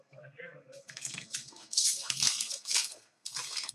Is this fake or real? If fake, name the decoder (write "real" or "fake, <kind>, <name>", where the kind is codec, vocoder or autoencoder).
fake, codec, SNAC